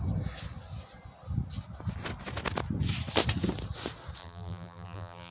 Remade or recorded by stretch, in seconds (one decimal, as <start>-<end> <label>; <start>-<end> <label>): 0.0-4.2 recorded; 4.2-5.3 remade